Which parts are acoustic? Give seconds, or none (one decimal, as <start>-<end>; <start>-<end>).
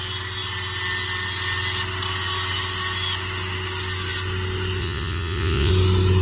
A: 0.0-4.8; 5.7-6.2